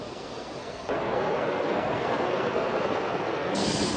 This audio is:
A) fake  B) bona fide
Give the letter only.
A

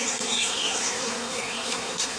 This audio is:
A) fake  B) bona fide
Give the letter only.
A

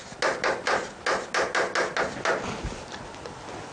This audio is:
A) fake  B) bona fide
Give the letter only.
B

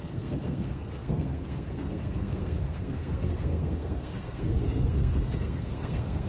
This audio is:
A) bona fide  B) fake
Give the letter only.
B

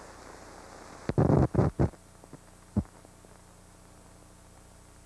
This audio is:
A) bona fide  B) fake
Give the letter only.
A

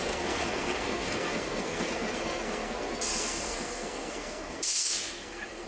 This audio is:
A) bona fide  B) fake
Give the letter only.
B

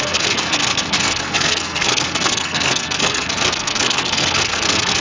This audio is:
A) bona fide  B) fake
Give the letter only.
B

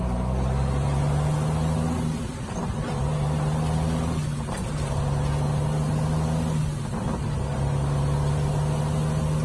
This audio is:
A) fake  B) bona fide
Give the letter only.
B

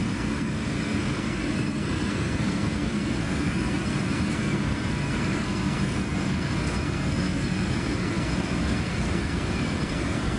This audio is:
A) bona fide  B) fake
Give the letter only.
B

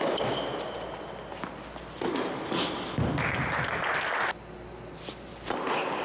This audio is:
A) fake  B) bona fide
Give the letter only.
B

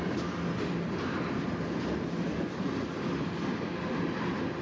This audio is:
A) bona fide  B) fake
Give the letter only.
A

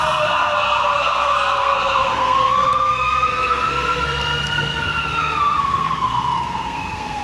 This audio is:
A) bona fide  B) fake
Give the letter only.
B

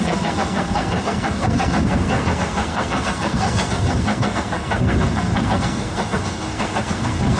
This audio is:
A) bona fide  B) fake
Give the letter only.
B